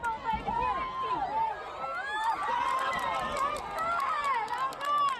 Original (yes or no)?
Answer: yes